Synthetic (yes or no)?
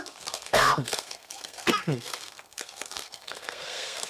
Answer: yes